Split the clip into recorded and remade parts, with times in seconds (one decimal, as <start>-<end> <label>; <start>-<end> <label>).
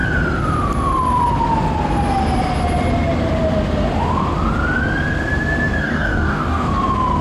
0.0-5.8 recorded; 5.8-6.7 remade; 6.7-7.2 recorded